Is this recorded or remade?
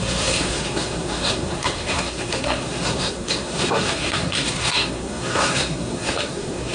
remade